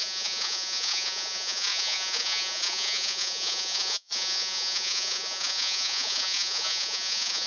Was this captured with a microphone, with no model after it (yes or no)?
no